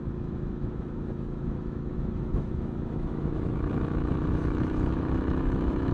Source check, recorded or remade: remade